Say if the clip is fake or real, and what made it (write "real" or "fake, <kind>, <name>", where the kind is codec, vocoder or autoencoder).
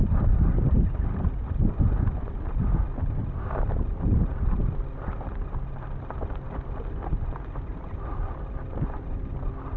real